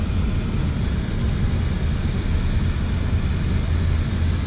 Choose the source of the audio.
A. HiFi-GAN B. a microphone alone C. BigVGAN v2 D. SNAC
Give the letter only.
B